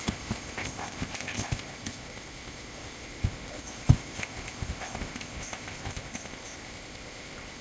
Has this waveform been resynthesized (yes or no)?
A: yes